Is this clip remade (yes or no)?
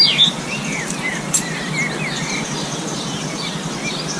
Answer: no